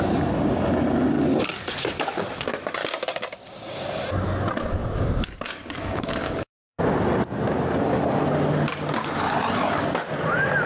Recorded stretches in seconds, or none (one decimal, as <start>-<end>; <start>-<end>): 0.0-2.8; 3.9-4.8; 6.8-10.7